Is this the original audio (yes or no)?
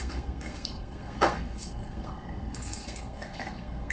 no